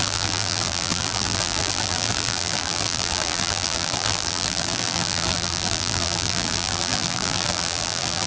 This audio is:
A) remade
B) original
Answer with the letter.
A